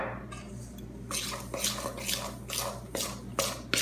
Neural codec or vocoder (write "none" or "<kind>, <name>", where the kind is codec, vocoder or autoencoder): none